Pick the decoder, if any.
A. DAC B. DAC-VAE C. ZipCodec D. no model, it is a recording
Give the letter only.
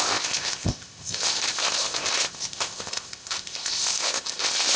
C